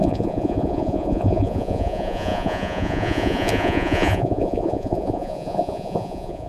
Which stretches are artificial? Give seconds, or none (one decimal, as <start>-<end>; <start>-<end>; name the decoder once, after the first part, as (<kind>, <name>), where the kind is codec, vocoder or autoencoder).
0.0-6.5 (vocoder, Vocos)